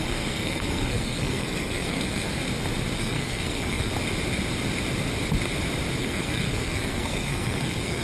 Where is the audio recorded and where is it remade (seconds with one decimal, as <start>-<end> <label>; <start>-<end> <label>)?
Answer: 0.0-2.4 remade; 2.4-3.0 recorded; 3.0-3.9 remade; 3.9-6.0 recorded; 6.0-8.0 remade